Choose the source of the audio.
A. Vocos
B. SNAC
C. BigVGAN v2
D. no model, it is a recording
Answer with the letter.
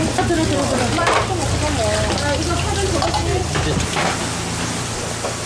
D